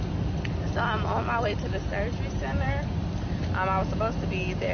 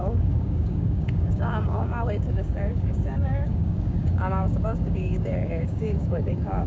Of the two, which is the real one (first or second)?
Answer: first